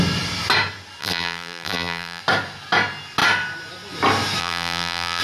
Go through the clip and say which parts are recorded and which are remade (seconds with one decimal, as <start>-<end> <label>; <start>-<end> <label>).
0.0-1.0 recorded; 1.0-2.2 remade; 2.2-4.4 recorded; 4.4-5.2 remade